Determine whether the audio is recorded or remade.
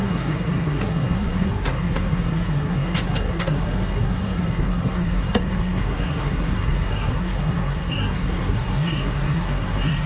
remade